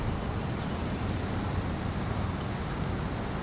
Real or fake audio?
real